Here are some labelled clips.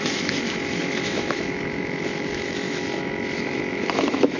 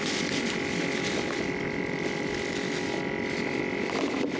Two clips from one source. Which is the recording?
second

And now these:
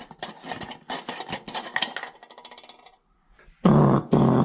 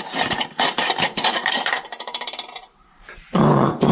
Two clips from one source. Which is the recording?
first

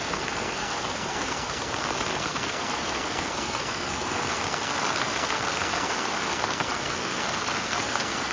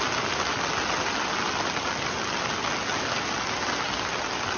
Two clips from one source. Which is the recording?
second